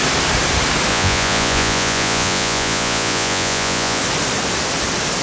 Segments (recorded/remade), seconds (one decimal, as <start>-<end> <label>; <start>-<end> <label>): 0.0-0.9 recorded; 0.9-4.0 remade; 4.0-5.2 recorded